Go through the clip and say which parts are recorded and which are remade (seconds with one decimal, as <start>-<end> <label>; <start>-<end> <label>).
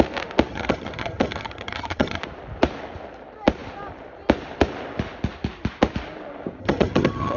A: 0.0-0.5 recorded; 0.5-2.2 remade; 2.2-6.6 recorded; 6.6-7.4 remade